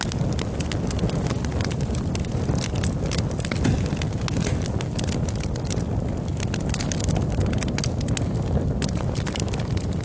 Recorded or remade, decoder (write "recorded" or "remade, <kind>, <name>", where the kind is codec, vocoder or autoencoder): recorded